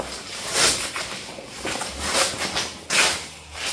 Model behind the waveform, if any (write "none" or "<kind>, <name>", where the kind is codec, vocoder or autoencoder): none